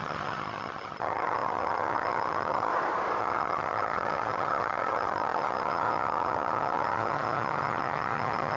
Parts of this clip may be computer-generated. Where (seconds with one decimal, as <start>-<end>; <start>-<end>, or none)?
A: 0.0-2.7; 3.2-8.6